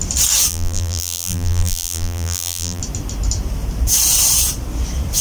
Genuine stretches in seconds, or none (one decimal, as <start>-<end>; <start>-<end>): 0.0-0.5; 2.8-5.2